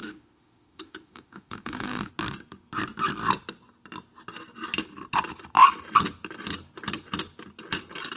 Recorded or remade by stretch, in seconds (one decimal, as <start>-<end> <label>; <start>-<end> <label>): 0.0-2.1 remade; 2.1-8.2 recorded